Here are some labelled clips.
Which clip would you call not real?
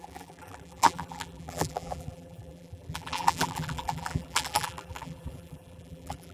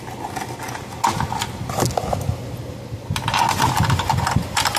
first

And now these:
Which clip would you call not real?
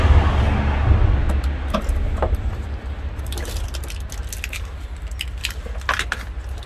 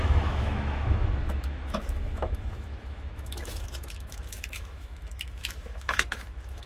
second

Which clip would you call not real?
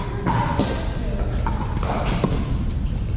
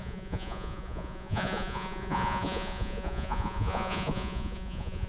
second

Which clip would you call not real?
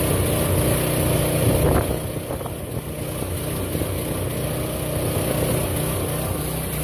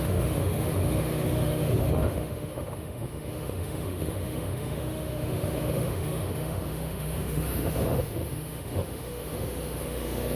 second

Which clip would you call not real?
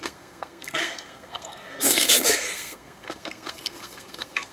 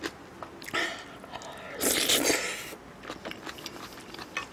first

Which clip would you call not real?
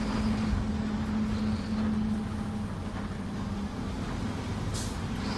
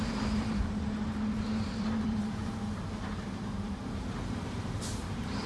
second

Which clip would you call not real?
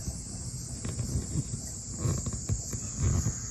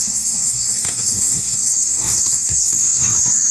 second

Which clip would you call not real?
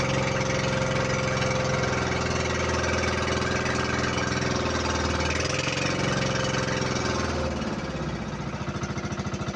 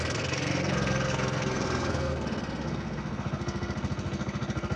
second